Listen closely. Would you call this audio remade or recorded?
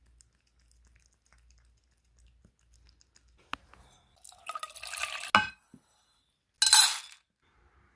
recorded